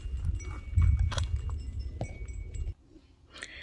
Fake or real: real